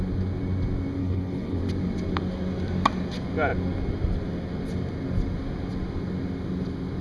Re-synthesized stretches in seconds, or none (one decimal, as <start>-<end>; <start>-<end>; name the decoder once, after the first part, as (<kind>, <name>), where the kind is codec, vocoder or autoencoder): 1.0-1.6 (codec, HILCodec)